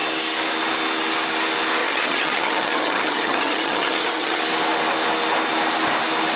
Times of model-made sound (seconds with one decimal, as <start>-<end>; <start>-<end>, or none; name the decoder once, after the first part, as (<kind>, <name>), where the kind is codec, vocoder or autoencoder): 1.8-4.4 (vocoder, HiFi-GAN)